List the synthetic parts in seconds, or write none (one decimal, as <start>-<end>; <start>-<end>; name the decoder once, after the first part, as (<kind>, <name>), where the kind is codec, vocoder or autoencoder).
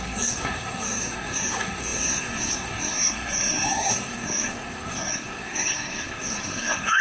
0.0-7.0 (codec, SNAC)